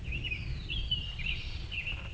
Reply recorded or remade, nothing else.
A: remade